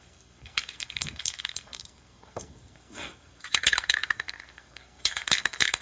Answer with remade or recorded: remade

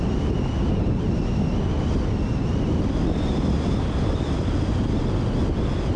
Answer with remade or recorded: recorded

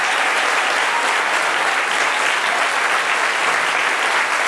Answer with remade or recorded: recorded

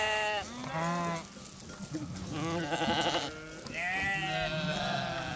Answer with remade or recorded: recorded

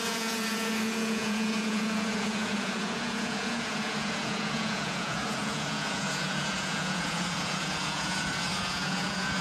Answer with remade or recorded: remade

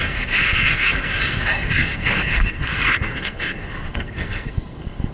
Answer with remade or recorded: remade